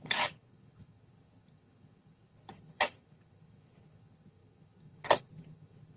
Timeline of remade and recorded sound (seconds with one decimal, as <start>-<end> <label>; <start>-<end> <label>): 0.0-6.0 remade